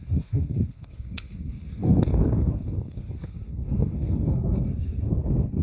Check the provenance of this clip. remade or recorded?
remade